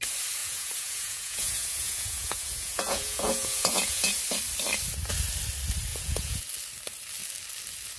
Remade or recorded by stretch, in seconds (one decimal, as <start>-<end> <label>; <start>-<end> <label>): 0.0-0.4 recorded; 0.4-4.2 remade; 4.2-5.9 recorded; 5.9-6.4 remade; 6.4-8.0 recorded